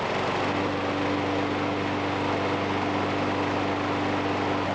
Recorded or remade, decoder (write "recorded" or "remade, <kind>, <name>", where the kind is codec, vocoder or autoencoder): recorded